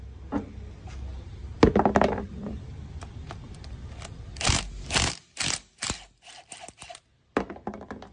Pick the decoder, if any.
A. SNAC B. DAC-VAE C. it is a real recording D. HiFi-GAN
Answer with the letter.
C